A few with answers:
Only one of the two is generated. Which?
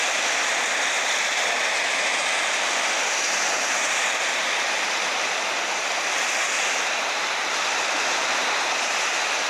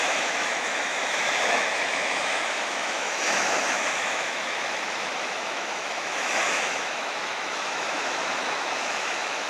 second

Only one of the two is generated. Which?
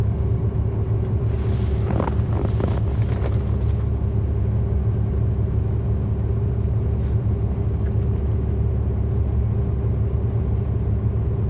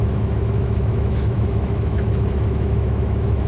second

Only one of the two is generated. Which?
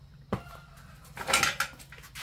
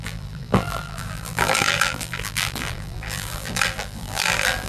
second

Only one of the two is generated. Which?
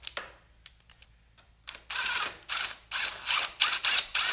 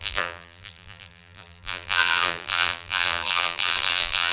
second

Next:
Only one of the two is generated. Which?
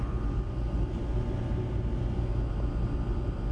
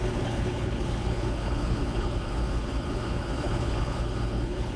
second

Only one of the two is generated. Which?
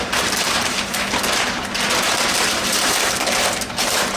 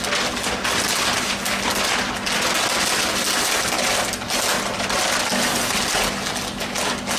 first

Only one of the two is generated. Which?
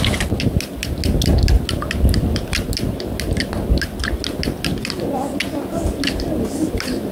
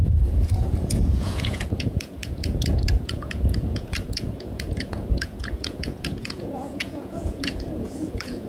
second